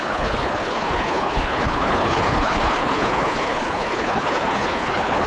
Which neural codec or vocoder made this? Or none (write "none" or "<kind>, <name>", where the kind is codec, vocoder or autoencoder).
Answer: codec, HILCodec